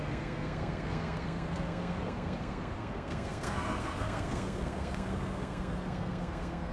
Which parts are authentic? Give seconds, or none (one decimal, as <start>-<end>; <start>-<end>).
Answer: none